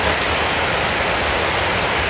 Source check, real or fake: real